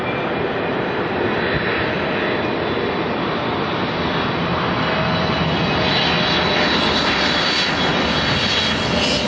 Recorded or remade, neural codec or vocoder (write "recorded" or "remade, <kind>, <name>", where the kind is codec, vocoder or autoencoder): recorded